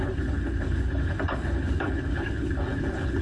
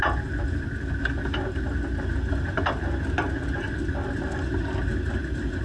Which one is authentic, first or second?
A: second